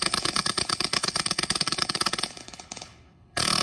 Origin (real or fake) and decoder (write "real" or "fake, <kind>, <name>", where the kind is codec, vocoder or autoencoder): fake, codec, HILCodec